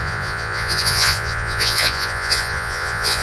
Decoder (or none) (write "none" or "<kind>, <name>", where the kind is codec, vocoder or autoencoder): vocoder, Vocos